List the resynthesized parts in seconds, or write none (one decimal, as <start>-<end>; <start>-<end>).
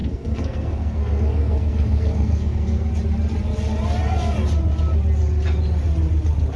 0.0-2.9